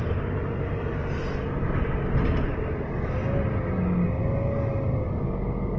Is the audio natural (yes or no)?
yes